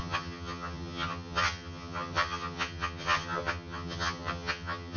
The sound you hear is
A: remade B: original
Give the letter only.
A